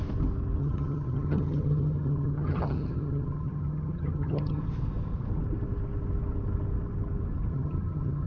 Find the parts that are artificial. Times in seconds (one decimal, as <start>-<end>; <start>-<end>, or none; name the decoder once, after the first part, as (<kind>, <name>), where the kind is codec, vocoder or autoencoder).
0.6-4.6 (vocoder, HiFi-GAN); 7.5-8.3